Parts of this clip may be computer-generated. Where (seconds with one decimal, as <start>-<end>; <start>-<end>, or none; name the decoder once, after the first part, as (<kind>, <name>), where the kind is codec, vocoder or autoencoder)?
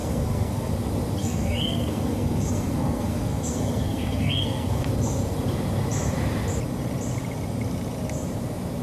0.0-0.7 (codec, SNAC); 1.2-4.9